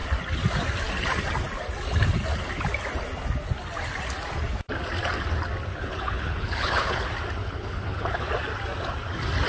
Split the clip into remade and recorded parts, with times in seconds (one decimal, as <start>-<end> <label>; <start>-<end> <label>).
0.0-5.7 recorded; 5.7-7.0 remade; 7.0-7.4 recorded; 7.4-8.3 remade; 8.3-9.5 recorded